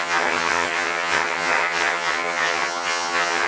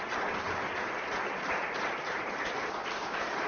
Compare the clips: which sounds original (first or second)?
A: second